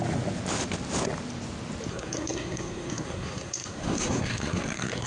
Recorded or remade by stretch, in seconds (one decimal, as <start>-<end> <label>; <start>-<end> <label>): 0.0-1.9 recorded; 1.9-5.1 remade

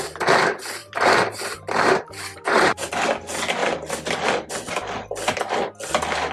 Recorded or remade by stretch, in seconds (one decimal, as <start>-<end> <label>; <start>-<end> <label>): 0.0-0.8 recorded; 0.8-2.9 remade; 2.9-6.3 recorded